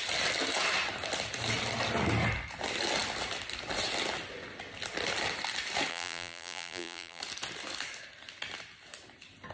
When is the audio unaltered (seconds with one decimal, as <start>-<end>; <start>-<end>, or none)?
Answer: 0.0-5.9; 7.2-9.5